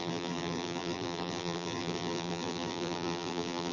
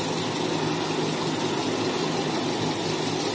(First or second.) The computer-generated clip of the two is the first